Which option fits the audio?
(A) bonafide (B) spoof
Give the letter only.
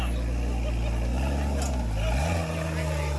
A